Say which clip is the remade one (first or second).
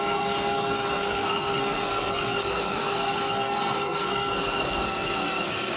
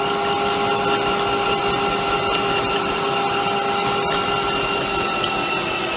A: first